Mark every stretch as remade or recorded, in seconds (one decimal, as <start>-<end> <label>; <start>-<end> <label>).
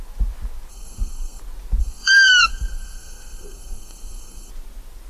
0.0-0.7 recorded; 0.7-1.4 remade; 1.4-1.8 recorded; 1.8-4.5 remade; 4.5-5.1 recorded